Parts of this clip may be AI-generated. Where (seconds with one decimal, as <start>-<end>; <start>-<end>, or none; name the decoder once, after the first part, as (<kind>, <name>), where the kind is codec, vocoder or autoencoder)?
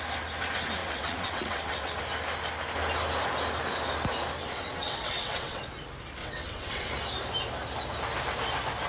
0.8-2.0 (vocoder, WaveNeXt); 4.4-5.6; 6.2-6.9